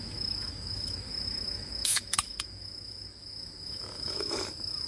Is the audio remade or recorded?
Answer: remade